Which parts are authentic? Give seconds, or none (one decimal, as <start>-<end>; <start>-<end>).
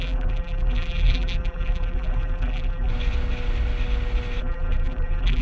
2.9-4.4